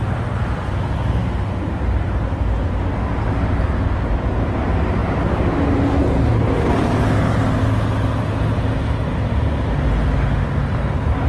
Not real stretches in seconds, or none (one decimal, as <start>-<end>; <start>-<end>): none